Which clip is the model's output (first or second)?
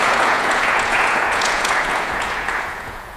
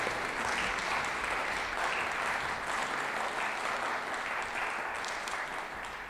first